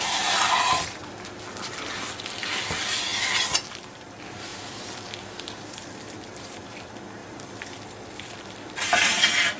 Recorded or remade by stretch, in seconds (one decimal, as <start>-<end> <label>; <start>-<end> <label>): 0.0-1.0 remade; 1.0-2.1 recorded; 2.1-3.1 remade; 3.1-3.7 recorded; 3.7-4.5 remade; 4.5-5.4 recorded; 5.4-9.6 remade